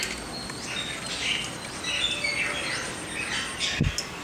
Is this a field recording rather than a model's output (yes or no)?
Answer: yes